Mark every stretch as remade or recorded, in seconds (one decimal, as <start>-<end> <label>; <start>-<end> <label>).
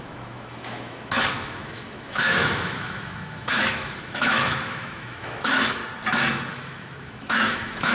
0.0-5.8 remade; 5.8-6.5 recorded; 6.5-7.9 remade